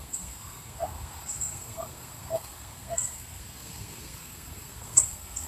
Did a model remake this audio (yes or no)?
yes